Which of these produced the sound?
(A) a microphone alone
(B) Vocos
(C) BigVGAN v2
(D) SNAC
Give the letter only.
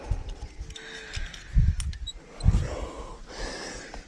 A